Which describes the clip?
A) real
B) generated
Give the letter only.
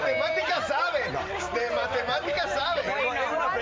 A